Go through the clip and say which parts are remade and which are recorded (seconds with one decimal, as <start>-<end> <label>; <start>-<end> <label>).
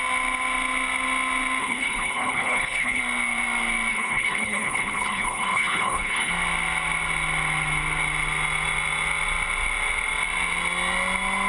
0.0-1.6 recorded; 1.6-3.0 remade; 3.0-3.9 recorded; 3.9-6.3 remade; 6.3-11.5 recorded